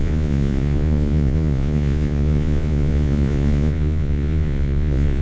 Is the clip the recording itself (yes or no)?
no